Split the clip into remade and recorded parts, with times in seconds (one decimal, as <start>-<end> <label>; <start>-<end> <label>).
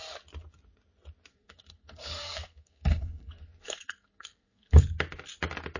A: 0.0-1.3 recorded; 1.3-4.8 remade; 4.8-5.8 recorded